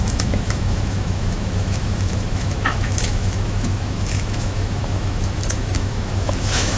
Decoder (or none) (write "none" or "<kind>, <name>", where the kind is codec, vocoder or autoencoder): autoencoder, DAC-VAE